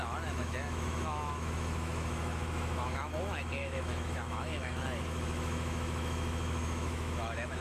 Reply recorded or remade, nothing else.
remade